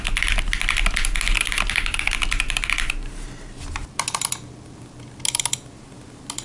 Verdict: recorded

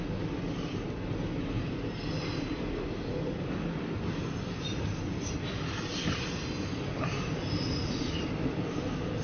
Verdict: recorded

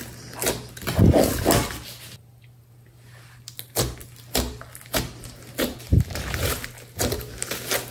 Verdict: recorded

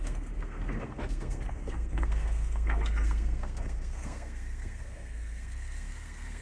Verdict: remade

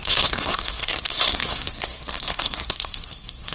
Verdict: remade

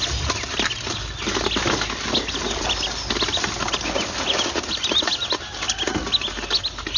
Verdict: recorded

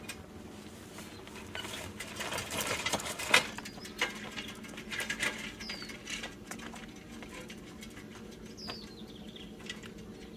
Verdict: recorded